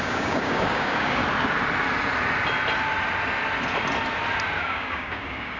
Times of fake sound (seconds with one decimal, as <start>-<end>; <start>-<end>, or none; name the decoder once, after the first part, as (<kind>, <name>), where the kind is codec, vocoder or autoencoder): 0.0-1.2 (codec, DAC); 4.6-5.6